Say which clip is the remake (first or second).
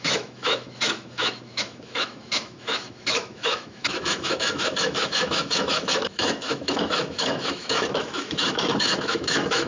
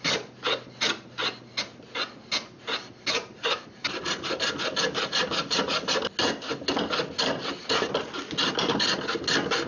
first